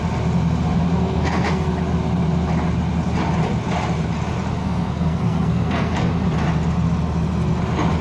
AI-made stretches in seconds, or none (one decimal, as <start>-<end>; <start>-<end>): 0.9-1.7; 4.6-6.1